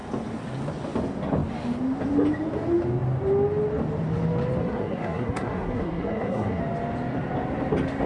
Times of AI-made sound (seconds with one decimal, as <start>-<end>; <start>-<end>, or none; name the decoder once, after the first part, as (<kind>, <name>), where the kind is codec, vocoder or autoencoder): 4.6-6.6 (codec, SNAC)